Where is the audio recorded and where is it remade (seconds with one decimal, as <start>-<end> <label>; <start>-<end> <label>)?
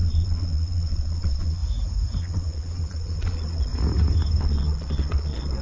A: 0.0-1.6 remade; 1.6-2.2 recorded; 2.2-3.7 remade; 3.7-4.4 recorded; 4.4-5.6 remade